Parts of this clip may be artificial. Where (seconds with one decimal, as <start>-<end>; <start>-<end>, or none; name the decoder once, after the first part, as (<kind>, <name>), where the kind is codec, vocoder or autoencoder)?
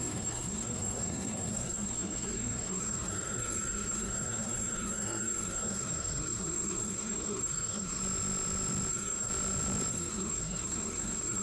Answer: 0.0-8.0 (codec, SNAC); 8.9-9.3; 9.9-11.4